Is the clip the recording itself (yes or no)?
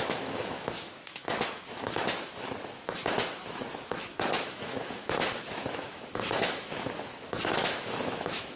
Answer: no